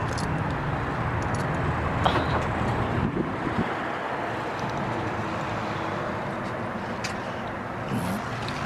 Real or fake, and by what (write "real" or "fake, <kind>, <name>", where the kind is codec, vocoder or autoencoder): real